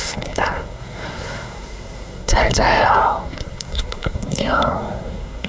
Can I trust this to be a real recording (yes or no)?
no